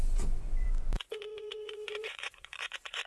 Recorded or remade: remade